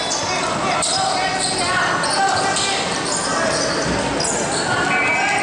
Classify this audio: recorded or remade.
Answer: recorded